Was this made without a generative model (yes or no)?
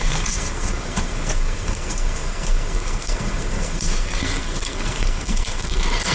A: no